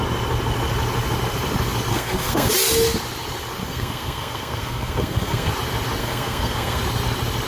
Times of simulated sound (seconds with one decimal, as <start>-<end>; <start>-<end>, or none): 1.9-2.5; 3.6-5.5; 6.0-6.8